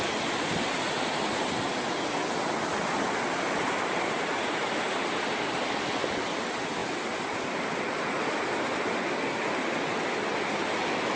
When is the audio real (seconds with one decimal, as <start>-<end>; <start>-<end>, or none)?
0.0-11.2